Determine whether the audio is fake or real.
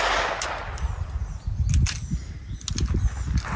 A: real